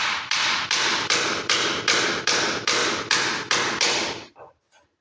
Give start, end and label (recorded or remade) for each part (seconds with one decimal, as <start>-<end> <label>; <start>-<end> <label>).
0.0-2.8 remade; 2.8-4.3 recorded; 4.3-5.0 remade